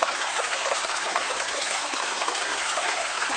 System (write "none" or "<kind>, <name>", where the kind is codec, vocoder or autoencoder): codec, SNAC